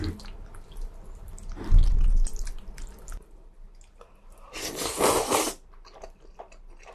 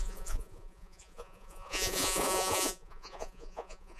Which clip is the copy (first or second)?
second